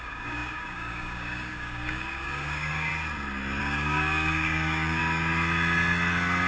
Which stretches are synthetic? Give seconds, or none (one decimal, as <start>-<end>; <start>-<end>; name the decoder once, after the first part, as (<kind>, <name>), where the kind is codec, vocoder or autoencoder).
0.0-2.9 (codec, DAC); 3.6-5.0

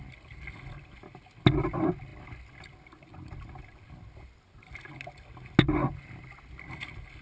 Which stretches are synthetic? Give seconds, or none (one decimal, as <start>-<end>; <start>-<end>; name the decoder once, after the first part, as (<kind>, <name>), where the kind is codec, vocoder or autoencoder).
none

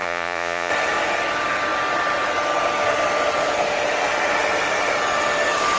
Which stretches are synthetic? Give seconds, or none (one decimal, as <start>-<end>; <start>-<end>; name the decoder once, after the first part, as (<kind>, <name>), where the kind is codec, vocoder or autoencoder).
0.0-0.7 (vocoder, Vocos)

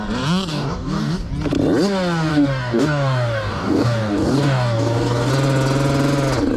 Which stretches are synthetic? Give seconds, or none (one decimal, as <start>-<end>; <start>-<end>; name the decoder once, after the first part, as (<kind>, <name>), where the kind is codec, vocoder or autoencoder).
0.5-1.3 (codec, DAC); 2.3-5.3

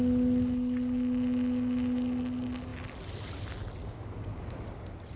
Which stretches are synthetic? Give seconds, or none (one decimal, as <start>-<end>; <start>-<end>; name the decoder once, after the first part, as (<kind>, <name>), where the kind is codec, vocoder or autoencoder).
3.8-4.5 (codec, DAC)

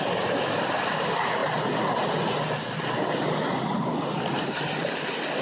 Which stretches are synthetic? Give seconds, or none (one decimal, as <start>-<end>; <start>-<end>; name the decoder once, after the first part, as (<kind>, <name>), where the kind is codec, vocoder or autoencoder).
none